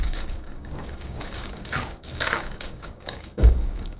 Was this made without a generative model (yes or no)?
no